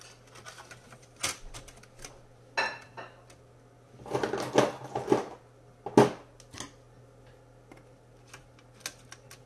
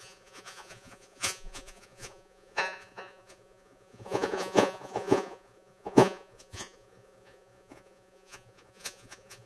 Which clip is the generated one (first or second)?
second